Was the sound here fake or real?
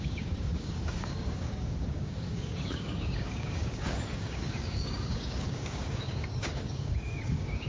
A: fake